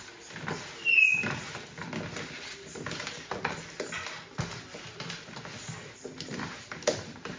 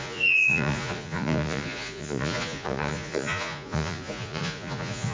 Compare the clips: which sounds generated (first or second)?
second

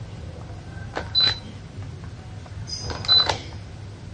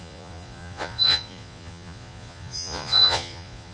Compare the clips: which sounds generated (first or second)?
second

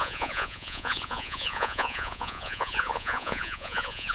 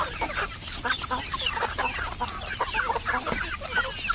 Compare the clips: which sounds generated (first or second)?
first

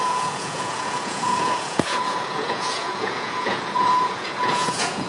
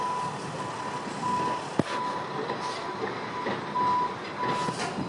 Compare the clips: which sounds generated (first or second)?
first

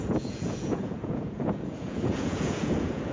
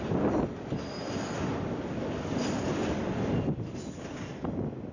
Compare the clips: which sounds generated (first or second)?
first